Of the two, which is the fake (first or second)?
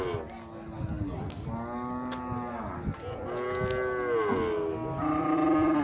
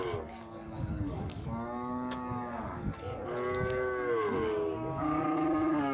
second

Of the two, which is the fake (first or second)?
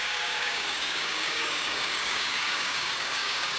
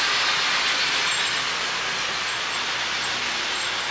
first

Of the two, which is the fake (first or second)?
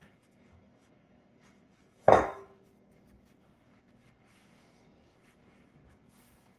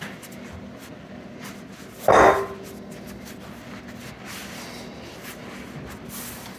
first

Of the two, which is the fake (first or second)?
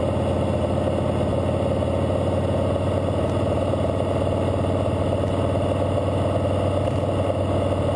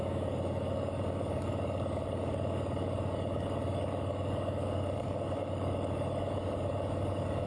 second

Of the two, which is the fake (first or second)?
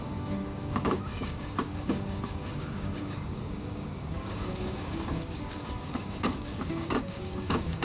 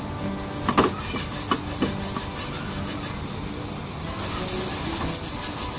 first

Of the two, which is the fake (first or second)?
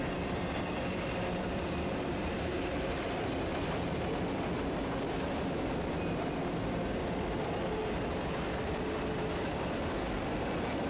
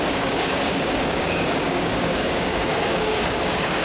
second